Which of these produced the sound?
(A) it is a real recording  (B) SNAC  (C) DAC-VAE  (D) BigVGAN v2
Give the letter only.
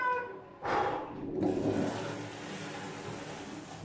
A